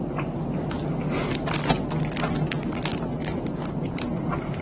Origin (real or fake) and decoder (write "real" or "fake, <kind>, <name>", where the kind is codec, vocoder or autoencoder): real